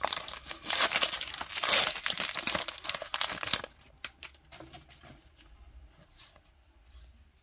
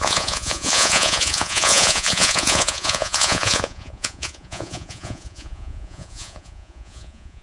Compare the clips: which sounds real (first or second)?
first